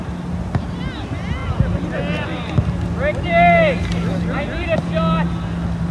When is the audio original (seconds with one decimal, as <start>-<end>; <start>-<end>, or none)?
0.0-5.9